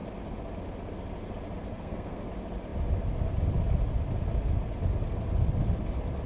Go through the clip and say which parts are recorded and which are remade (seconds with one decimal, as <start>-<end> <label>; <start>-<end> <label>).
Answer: 0.0-1.7 recorded; 1.7-2.3 remade; 2.3-6.3 recorded